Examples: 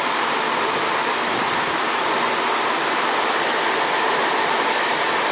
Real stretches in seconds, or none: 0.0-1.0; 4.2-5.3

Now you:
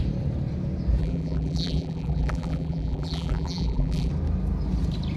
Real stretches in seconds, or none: 0.0-1.0; 4.1-5.2

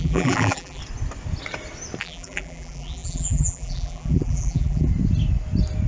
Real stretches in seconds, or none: 0.8-2.0; 4.9-5.9

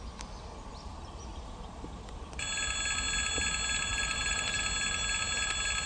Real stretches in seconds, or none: 0.0-0.7; 2.2-3.9; 4.6-5.9